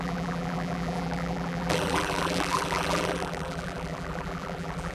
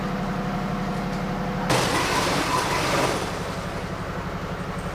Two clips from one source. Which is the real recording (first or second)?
second